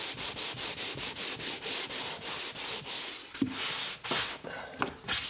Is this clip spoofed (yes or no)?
no